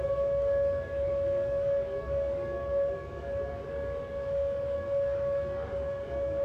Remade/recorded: remade